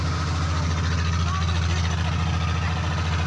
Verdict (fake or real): real